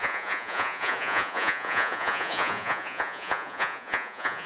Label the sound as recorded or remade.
remade